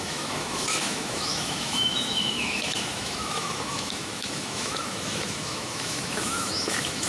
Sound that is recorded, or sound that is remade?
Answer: remade